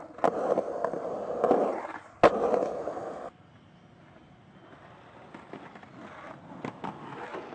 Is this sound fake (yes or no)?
no